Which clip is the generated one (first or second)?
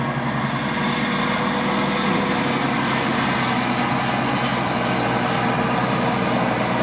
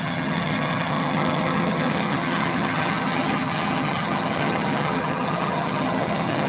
second